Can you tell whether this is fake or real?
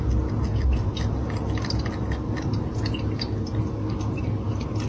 real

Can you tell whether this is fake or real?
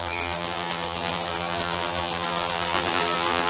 fake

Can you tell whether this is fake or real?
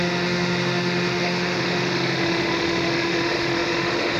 fake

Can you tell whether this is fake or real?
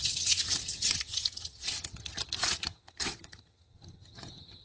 fake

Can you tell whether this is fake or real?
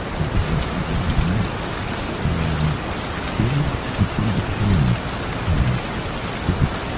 real